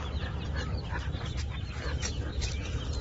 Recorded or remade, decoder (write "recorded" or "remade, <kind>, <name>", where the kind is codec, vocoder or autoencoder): recorded